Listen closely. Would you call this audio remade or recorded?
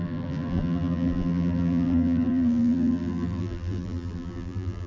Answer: remade